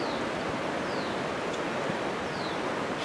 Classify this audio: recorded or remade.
recorded